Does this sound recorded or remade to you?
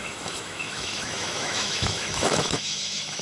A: remade